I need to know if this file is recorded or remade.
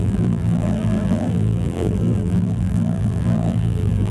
remade